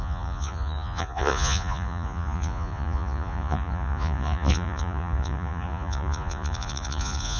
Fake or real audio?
fake